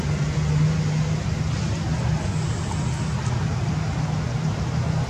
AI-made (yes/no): no